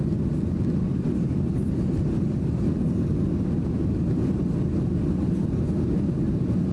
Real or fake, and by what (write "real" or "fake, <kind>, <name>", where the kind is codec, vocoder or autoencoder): real